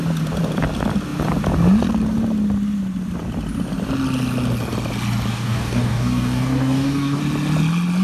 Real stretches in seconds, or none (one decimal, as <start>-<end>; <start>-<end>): 0.0-5.3; 7.2-8.0